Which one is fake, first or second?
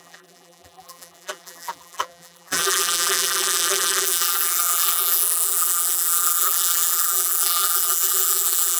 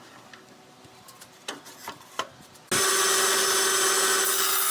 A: first